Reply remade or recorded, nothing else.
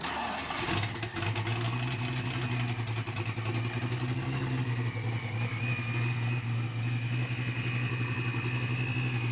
recorded